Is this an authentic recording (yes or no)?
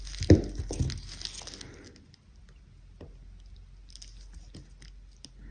yes